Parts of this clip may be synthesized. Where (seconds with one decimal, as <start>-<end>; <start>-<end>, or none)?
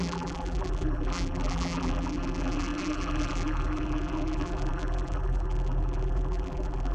0.0-6.9